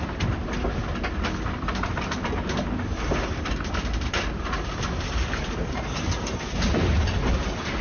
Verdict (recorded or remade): recorded